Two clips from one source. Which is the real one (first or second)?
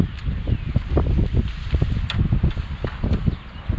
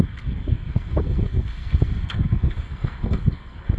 first